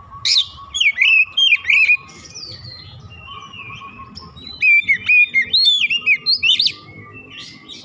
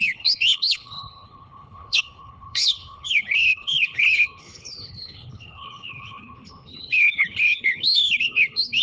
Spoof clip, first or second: second